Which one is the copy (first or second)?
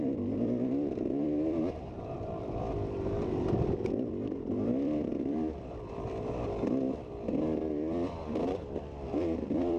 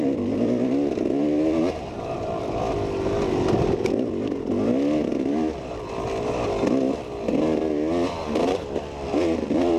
first